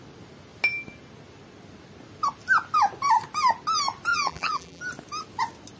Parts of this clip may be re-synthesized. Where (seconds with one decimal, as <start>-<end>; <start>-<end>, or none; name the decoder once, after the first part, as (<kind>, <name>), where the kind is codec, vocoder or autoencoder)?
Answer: 4.1-4.8 (vocoder, BigVGAN v2)